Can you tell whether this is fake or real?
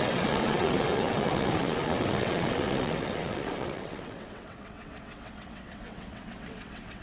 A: fake